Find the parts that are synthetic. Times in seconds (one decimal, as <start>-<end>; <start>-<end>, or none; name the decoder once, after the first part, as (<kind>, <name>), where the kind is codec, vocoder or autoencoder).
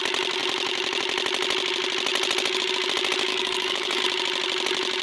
3.3-4.0 (codec, DAC)